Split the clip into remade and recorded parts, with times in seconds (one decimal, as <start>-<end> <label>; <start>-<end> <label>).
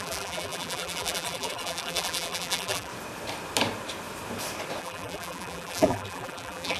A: 0.0-2.9 remade; 2.9-4.8 recorded; 4.8-6.8 remade